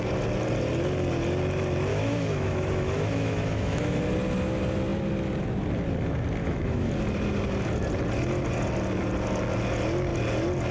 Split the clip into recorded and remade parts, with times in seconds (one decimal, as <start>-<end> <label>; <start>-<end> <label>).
0.0-1.9 recorded; 1.9-4.0 remade; 4.0-6.4 recorded; 6.4-6.9 remade; 6.9-10.7 recorded